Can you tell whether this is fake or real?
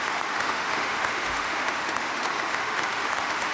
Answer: fake